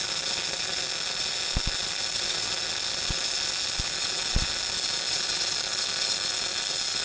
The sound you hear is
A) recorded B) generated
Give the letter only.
A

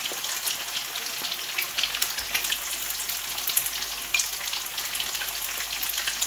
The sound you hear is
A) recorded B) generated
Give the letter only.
A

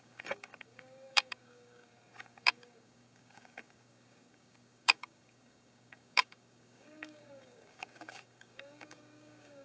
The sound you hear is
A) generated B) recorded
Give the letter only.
A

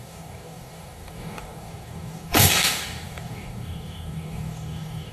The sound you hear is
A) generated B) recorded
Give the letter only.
A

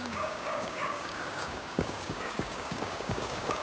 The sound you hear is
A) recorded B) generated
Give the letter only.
B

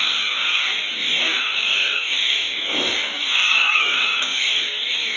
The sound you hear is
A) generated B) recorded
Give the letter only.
A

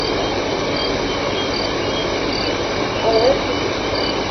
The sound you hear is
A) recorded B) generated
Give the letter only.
A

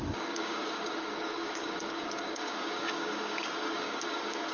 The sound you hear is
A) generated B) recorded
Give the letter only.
A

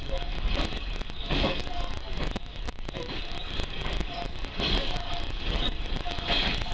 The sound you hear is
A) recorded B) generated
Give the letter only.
B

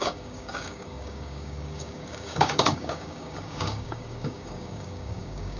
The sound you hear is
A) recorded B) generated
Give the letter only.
B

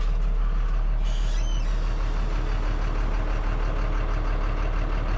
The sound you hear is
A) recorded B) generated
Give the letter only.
A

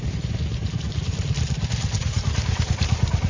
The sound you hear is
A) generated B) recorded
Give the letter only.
B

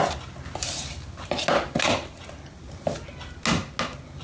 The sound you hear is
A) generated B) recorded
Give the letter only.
B